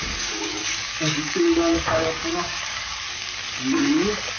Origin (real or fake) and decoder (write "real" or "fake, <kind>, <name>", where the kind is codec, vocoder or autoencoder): fake, codec, DAC